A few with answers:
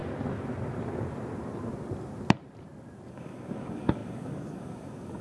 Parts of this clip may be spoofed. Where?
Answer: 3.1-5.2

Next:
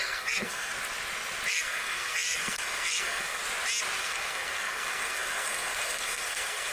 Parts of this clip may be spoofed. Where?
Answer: 0.0-0.7; 1.5-3.4; 4.0-6.7

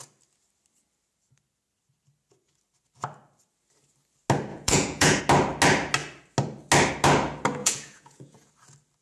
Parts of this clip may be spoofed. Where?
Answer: 4.5-5.2; 7.6-8.5

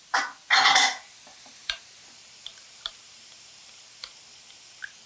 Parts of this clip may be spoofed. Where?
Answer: 1.3-4.4